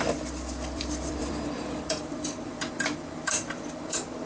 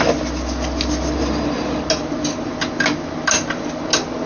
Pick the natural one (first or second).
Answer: second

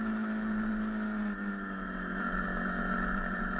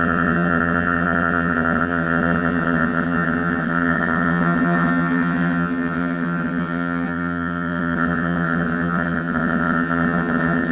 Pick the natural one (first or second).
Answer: first